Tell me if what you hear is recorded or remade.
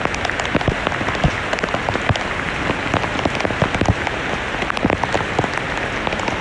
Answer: recorded